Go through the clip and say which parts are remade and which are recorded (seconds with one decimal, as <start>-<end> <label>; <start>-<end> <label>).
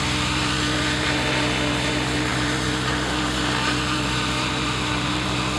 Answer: 0.0-5.6 remade